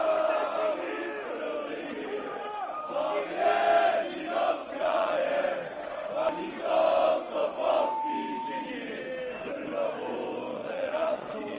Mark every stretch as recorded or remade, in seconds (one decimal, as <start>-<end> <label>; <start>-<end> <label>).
0.0-4.6 recorded; 4.6-5.2 remade; 5.2-10.5 recorded; 10.5-11.6 remade

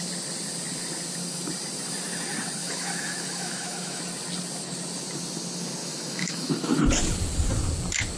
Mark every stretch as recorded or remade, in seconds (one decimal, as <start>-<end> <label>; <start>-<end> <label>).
0.0-2.6 recorded; 2.6-4.0 remade; 4.0-5.8 recorded; 5.8-6.5 remade; 6.5-8.2 recorded

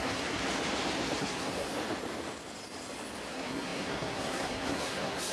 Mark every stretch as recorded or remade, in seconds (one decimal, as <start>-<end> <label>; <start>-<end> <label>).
0.0-0.4 remade; 0.4-1.2 recorded; 1.2-1.7 remade; 1.7-3.3 recorded; 3.3-5.3 remade

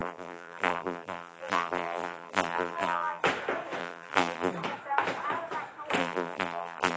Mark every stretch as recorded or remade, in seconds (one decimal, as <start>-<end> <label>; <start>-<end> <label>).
0.0-3.2 remade; 3.2-3.8 recorded; 3.8-4.5 remade; 4.5-6.0 recorded; 6.0-7.0 remade

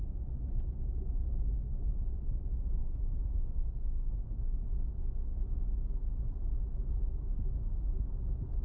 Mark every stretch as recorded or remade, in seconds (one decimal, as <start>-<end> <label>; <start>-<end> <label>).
0.0-2.8 recorded; 2.8-3.6 remade; 3.6-8.6 recorded

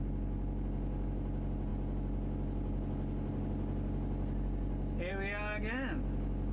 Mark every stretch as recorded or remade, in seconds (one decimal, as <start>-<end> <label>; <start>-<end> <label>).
0.0-6.5 recorded

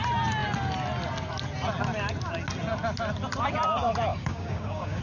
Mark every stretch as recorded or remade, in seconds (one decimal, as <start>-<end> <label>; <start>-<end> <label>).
0.0-4.1 recorded; 4.1-5.0 remade